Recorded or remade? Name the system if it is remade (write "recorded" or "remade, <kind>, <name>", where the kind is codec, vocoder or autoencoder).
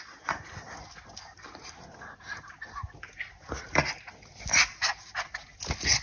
recorded